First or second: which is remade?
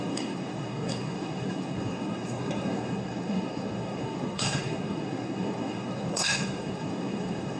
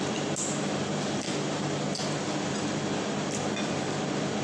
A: first